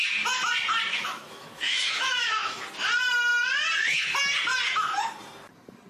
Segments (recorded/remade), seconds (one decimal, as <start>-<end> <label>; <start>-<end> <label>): 0.0-0.9 recorded; 0.9-2.6 remade; 2.6-5.9 recorded